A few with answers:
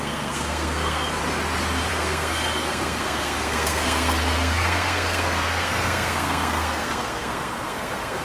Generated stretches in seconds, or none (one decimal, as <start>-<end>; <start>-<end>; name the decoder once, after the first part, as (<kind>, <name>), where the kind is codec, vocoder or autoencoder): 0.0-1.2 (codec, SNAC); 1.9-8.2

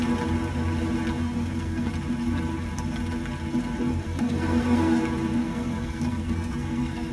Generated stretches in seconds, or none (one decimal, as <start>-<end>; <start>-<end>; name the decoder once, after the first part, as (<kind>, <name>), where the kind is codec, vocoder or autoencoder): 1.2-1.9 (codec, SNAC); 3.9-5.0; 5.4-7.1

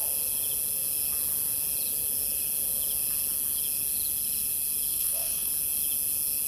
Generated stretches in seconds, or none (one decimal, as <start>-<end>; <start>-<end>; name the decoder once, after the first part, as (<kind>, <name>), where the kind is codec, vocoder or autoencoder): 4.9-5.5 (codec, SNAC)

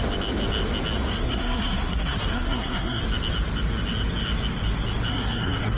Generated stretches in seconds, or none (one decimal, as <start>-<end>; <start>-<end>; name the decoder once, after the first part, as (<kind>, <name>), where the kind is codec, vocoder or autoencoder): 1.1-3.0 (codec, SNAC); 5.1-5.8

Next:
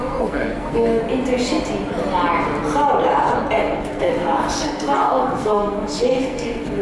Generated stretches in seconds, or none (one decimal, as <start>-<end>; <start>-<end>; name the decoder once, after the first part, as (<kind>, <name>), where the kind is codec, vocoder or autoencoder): 0.0-1.0 (codec, SNAC); 3.6-6.8

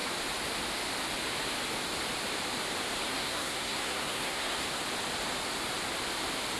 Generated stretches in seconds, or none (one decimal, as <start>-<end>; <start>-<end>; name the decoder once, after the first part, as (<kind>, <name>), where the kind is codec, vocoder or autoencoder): 3.1-4.8 (codec, SNAC)

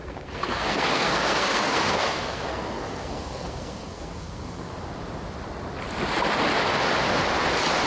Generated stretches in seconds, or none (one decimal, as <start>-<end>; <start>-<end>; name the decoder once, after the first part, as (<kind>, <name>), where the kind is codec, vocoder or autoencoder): 0.0-4.7 (codec, SNAC)